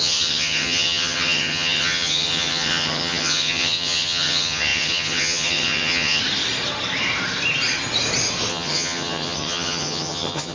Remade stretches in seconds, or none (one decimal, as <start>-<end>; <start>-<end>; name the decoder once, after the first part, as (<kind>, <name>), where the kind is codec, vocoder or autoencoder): 0.0-6.2 (vocoder, HiFi-GAN); 8.5-10.5